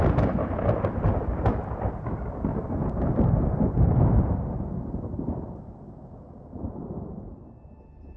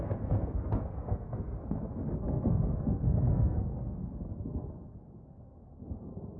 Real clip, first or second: first